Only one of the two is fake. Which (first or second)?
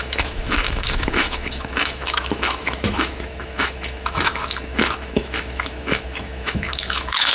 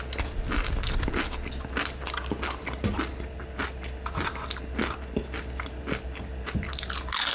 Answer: first